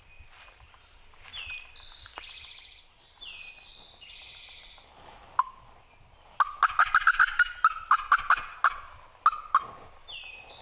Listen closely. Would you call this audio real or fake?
real